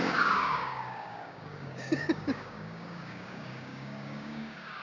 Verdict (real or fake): fake